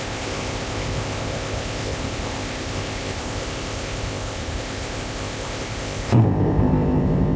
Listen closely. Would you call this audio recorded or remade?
remade